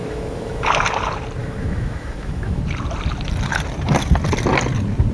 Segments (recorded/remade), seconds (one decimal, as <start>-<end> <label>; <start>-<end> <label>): 0.0-0.7 remade; 0.7-1.4 recorded; 1.4-2.6 remade; 2.6-5.1 recorded